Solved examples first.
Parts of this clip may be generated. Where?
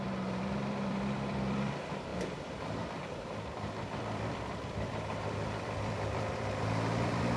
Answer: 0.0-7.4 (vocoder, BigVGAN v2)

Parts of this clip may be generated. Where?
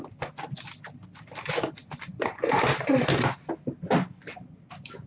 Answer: 1.8-3.5 (vocoder, BigVGAN v2)